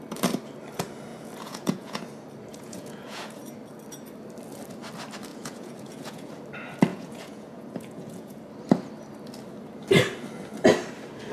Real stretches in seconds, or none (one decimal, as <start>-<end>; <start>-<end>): 0.0-1.1; 2.0-2.5; 3.4-5.3; 6.3-6.9; 8.4-11.3